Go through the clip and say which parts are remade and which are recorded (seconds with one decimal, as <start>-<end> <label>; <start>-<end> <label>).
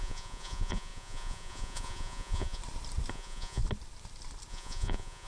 0.0-2.6 remade; 2.6-3.1 recorded; 3.1-3.6 remade; 3.6-4.5 recorded; 4.5-5.3 remade